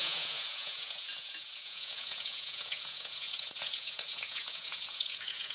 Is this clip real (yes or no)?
no